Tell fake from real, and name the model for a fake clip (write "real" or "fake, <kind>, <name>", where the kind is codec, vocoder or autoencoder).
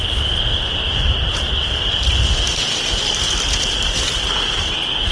real